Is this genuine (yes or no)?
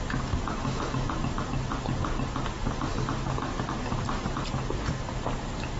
yes